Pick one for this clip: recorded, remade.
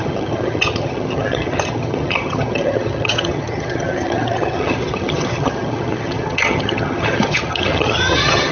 remade